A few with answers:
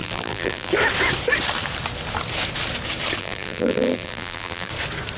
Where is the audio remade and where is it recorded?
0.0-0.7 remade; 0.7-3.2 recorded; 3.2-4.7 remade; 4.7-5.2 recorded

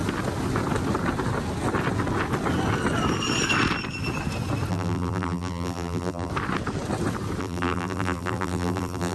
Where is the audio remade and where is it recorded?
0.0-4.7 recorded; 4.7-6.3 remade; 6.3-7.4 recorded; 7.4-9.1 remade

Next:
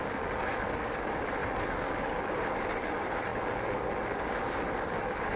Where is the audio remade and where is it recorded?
0.0-5.4 recorded

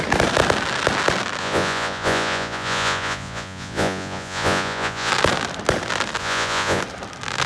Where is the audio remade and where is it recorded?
0.0-1.4 recorded; 1.4-5.1 remade; 5.1-6.2 recorded; 6.2-6.8 remade; 6.8-7.5 recorded